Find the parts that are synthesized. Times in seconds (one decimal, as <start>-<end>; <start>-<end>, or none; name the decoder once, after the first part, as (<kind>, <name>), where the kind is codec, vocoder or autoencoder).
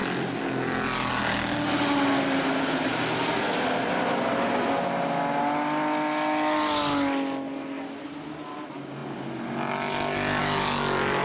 none